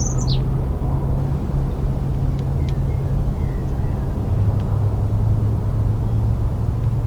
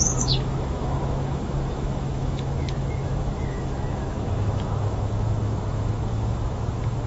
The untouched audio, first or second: first